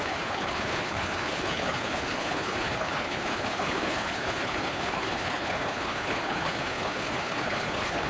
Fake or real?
fake